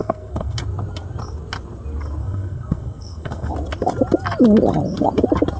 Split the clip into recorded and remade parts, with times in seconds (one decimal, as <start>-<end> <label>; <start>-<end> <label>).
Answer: 0.0-0.6 remade; 0.6-2.2 recorded; 2.2-3.5 remade; 3.5-5.6 recorded